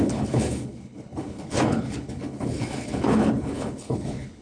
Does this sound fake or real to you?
fake